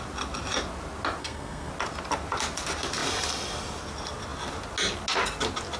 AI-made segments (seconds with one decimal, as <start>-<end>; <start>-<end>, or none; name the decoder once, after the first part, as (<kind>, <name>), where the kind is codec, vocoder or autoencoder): 1.2-1.7 (codec, SNAC)